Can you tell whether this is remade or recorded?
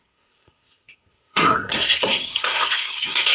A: remade